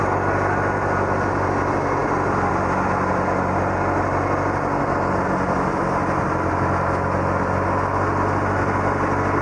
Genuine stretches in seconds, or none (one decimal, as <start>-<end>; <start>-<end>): 0.0-9.4